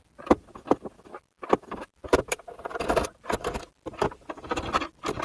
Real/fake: real